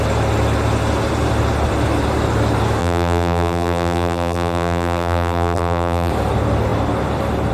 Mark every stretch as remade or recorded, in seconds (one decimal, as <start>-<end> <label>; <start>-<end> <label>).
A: 0.0-2.8 recorded; 2.8-6.1 remade; 6.1-7.5 recorded